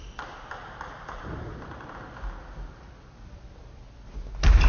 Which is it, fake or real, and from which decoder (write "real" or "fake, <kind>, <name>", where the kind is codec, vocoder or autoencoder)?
real